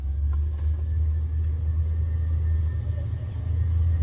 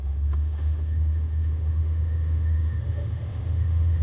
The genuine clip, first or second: first